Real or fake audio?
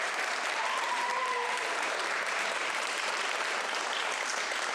fake